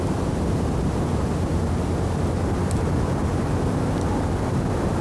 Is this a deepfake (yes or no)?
no